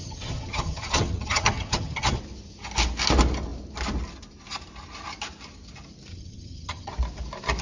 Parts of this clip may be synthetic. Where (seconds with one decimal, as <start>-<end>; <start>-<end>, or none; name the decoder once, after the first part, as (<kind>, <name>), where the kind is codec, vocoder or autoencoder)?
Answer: 0.0-2.2 (vocoder, HiFi-GAN); 6.1-6.9